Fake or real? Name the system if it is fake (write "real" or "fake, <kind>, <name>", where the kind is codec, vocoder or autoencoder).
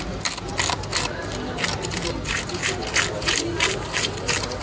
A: real